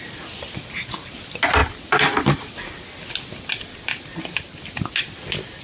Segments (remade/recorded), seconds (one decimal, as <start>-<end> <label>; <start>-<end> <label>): 0.0-5.6 recorded